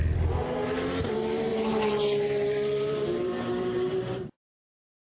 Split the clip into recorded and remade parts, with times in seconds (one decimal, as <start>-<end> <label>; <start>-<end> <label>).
0.0-0.4 recorded; 0.4-0.9 remade; 0.9-1.5 recorded; 1.5-4.6 remade; 4.6-5.1 recorded